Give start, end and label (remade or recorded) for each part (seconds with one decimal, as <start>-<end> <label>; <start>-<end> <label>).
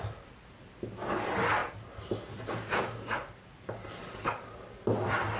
0.0-1.6 recorded; 1.6-3.5 remade; 3.5-5.4 recorded